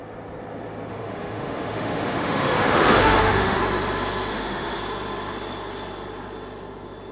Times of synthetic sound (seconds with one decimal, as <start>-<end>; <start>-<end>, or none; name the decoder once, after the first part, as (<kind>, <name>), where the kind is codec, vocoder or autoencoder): 0.9-3.6 (autoencoder, DAC-VAE); 4.3-4.8